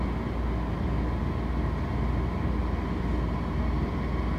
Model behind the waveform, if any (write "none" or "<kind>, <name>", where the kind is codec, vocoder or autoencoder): none